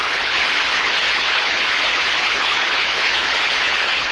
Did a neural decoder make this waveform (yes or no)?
yes